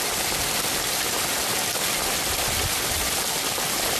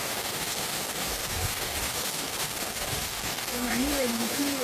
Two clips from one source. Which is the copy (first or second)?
second